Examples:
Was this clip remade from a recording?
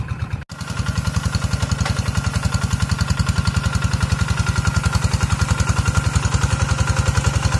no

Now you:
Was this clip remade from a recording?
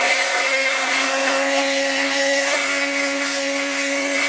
yes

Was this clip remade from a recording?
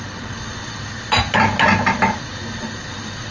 no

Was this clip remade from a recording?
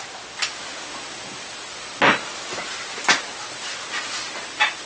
no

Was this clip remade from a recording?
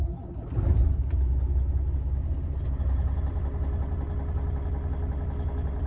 no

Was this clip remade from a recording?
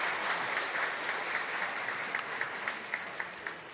no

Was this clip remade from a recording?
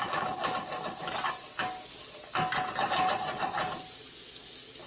no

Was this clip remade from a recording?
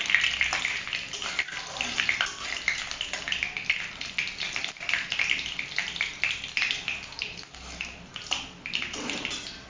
no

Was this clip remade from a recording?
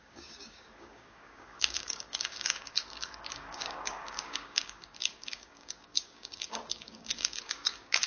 yes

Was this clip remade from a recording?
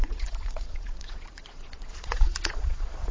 yes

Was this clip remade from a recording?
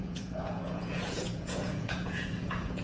yes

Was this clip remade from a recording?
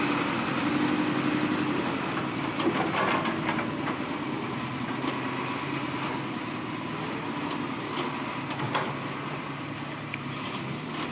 no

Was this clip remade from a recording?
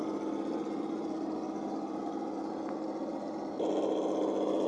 no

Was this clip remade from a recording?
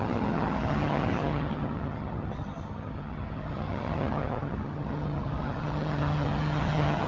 yes